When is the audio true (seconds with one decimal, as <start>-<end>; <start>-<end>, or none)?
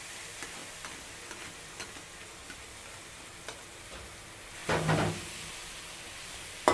0.0-6.7